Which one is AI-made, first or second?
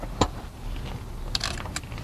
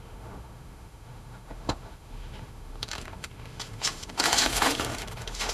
second